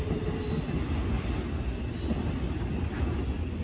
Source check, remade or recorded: recorded